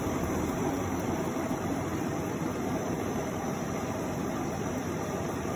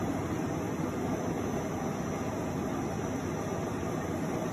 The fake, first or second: first